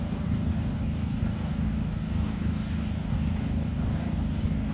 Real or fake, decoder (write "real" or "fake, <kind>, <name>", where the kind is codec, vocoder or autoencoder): fake, codec, DAC